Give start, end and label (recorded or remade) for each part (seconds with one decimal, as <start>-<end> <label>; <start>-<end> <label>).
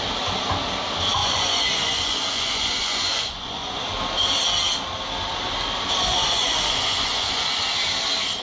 0.0-1.2 recorded; 1.2-3.8 remade; 3.8-6.1 recorded; 6.1-7.6 remade; 7.6-8.4 recorded